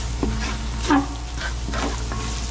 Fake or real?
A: real